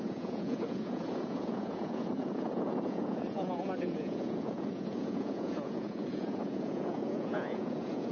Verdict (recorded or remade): remade